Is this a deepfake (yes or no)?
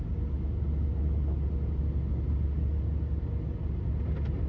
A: no